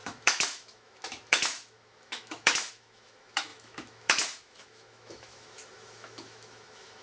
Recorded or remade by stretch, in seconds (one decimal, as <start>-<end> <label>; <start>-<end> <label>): 0.0-7.0 remade